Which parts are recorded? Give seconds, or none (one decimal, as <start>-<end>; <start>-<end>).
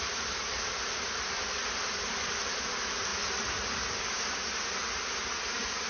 0.0-5.9